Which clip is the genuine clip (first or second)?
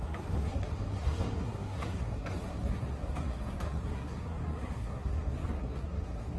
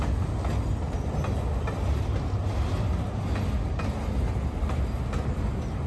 second